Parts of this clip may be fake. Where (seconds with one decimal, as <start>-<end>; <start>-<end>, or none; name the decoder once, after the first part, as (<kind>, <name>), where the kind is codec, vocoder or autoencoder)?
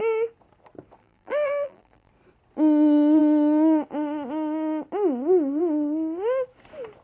1.0-2.1 (vocoder, BigVGAN v2)